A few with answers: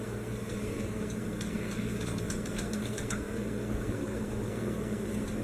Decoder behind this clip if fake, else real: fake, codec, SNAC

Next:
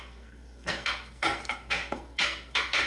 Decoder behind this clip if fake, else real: fake, codec, SNAC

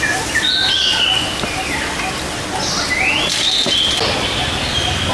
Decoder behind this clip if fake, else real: real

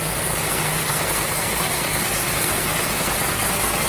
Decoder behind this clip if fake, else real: fake, codec, SNAC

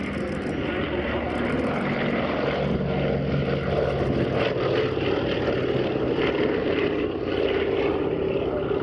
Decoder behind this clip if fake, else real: real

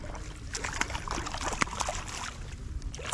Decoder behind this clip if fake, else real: real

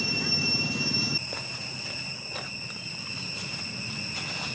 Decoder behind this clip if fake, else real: real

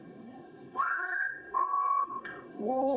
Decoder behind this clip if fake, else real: fake, codec, SNAC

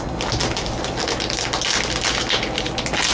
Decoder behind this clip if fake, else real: real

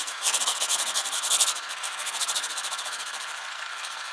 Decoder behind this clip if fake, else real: fake, codec, SNAC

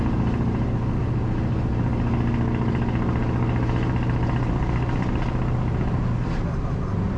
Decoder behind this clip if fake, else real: real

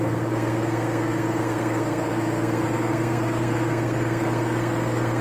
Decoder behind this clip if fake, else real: fake, codec, SNAC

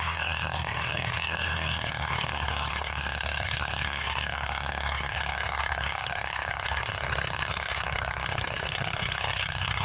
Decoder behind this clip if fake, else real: fake, codec, SNAC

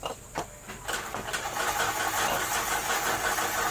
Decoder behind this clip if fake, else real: real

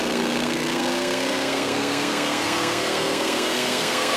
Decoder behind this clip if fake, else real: fake, codec, SNAC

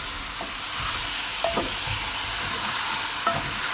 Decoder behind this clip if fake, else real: real